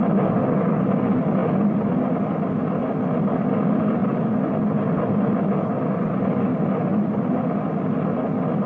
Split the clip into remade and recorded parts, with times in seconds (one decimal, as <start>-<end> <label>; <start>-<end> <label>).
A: 0.0-8.7 recorded